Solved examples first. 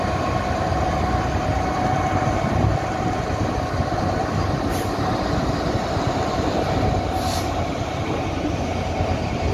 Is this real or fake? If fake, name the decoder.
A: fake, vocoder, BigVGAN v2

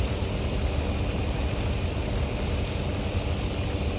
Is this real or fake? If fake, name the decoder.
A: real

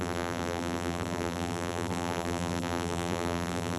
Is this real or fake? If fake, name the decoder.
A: fake, vocoder, BigVGAN v2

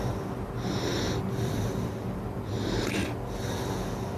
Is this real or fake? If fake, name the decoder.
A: real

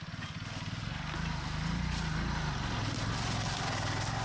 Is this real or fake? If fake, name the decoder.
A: real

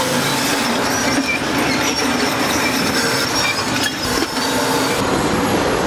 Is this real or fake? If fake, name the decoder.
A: fake, vocoder, BigVGAN v2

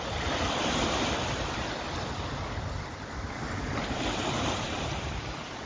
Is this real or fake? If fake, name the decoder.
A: fake, vocoder, BigVGAN v2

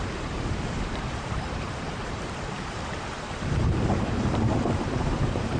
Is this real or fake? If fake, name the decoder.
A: fake, vocoder, BigVGAN v2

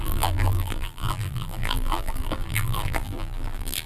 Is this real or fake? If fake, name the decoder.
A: fake, vocoder, BigVGAN v2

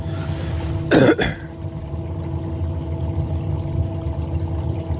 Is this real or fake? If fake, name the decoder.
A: real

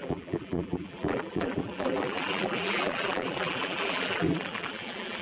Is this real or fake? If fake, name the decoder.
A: fake, vocoder, BigVGAN v2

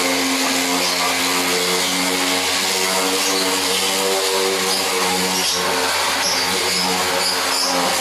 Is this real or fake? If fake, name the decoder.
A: real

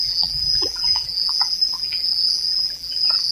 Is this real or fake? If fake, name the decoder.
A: fake, vocoder, BigVGAN v2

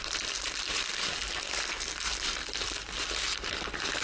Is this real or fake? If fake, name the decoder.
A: fake, vocoder, BigVGAN v2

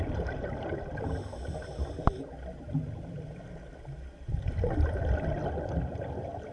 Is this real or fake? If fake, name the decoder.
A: real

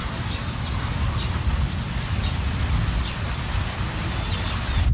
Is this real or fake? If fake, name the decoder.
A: fake, vocoder, BigVGAN v2